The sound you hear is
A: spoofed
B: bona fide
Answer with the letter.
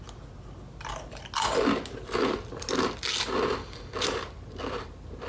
B